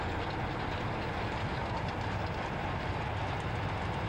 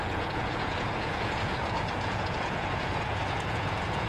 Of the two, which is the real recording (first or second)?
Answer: first